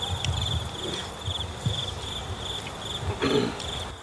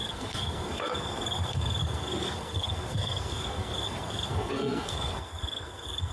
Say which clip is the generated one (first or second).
second